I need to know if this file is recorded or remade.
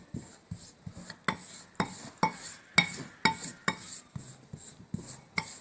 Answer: recorded